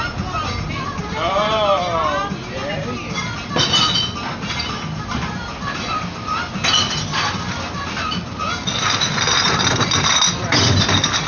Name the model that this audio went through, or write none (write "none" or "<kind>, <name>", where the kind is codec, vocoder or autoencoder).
none